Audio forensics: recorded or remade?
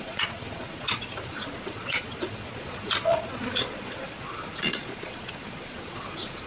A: remade